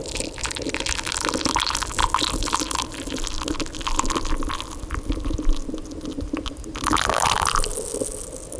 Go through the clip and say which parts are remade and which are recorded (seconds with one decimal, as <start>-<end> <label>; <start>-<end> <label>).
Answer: 0.0-8.6 recorded